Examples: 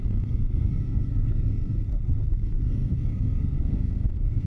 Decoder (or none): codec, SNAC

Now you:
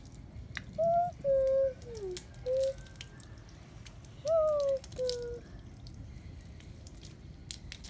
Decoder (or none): none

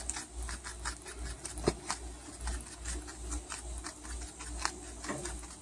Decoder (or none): none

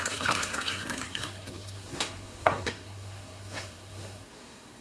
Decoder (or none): codec, SNAC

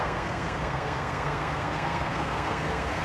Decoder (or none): codec, SNAC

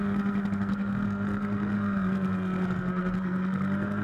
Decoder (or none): codec, SNAC